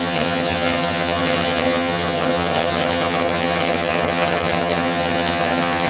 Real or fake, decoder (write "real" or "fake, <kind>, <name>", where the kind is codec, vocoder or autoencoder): fake, vocoder, HiFi-GAN